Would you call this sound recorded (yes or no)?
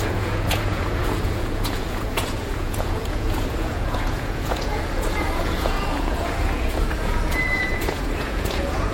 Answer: no